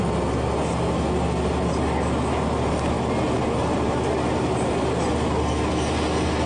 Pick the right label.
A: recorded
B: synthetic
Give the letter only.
A